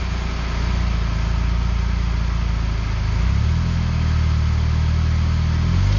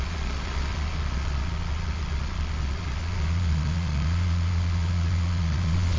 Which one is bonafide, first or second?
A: first